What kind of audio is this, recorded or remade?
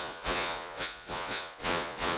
remade